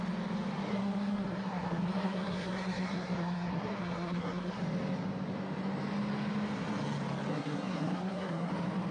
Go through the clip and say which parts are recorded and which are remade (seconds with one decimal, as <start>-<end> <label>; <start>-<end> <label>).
0.0-0.7 recorded; 0.7-4.6 remade; 4.6-7.3 recorded; 7.3-8.5 remade; 8.5-8.9 recorded